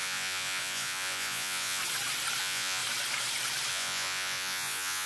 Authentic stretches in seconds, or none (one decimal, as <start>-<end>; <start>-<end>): 1.8-2.4; 2.8-3.7